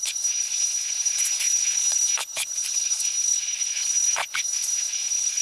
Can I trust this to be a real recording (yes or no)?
no